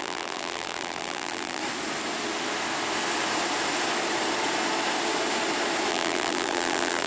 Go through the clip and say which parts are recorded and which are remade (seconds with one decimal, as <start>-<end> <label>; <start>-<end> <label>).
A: 0.0-1.6 remade; 1.6-5.9 recorded; 5.9-7.1 remade